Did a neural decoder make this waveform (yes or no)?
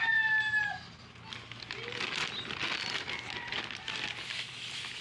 no